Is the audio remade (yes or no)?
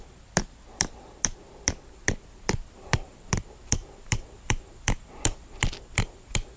no